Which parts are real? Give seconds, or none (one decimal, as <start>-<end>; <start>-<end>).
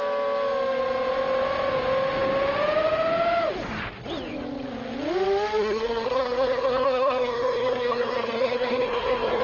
0.0-5.6